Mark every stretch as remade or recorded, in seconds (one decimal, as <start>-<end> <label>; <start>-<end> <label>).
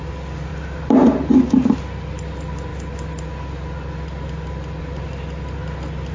0.0-0.5 recorded; 0.5-1.3 remade; 1.3-6.1 recorded